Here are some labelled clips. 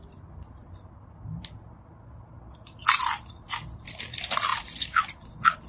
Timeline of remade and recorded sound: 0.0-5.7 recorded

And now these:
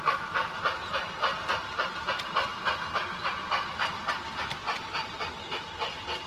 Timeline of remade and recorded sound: 0.0-6.3 recorded

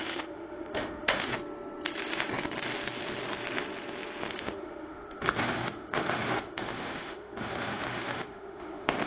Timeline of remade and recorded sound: 0.0-1.3 remade; 1.3-4.3 recorded; 4.3-9.1 remade

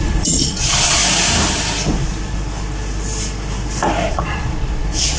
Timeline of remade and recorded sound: 0.0-1.0 remade; 1.0-4.1 recorded; 4.1-5.2 remade

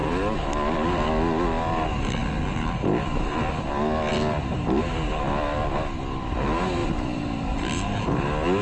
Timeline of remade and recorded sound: 0.0-4.1 recorded; 4.1-4.8 remade; 4.8-6.8 recorded; 6.8-8.0 remade; 8.0-8.6 recorded

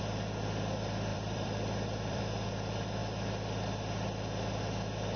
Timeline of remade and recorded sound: 0.0-1.1 recorded; 1.1-2.2 remade; 2.2-5.2 recorded

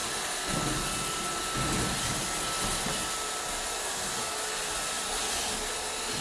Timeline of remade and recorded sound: 0.0-6.2 recorded

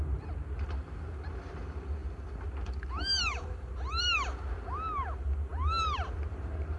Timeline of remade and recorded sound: 0.0-6.8 remade